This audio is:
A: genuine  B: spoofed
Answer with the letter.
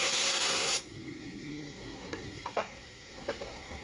B